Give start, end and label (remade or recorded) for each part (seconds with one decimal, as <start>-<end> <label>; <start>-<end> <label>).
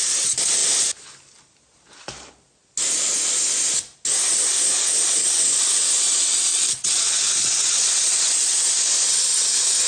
0.0-6.5 recorded; 6.5-8.7 remade; 8.7-9.9 recorded